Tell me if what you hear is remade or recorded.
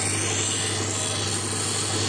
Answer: recorded